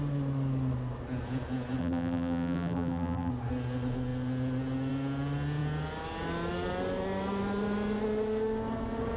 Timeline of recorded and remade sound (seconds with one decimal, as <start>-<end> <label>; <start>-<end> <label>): 0.0-1.8 recorded; 1.8-3.3 remade; 3.3-9.2 recorded